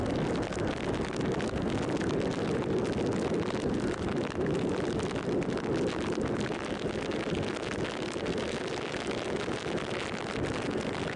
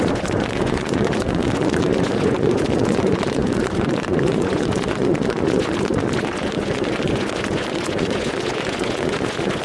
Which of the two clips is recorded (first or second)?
first